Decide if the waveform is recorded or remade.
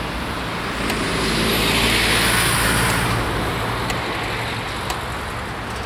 recorded